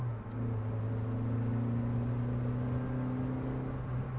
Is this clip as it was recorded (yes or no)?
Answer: yes